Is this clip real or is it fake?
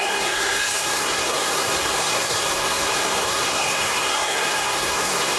fake